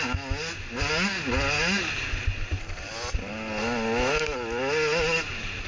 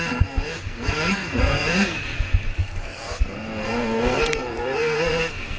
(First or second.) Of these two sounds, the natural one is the first